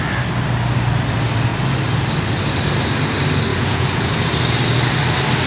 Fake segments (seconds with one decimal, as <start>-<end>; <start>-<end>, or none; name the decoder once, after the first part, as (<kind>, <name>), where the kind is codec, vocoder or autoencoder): 3.5-4.1 (vocoder, Vocos)